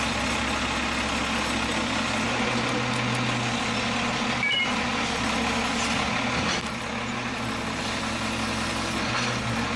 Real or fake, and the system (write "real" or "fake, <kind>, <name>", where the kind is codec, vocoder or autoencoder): real